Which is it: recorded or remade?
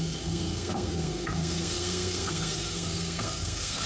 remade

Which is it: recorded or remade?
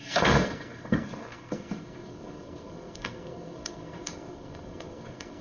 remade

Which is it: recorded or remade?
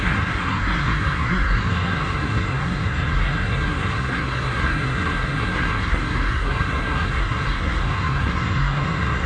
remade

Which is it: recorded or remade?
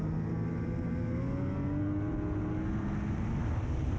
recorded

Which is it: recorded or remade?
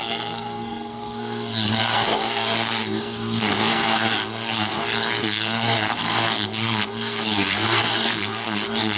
remade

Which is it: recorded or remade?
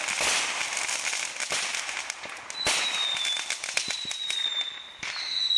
recorded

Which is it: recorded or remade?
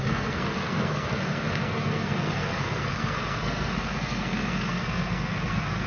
remade